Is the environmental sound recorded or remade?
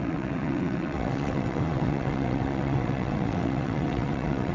remade